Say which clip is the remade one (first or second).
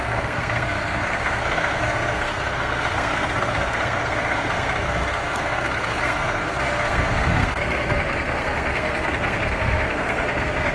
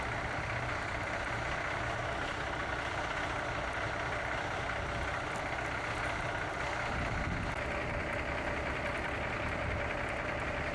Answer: first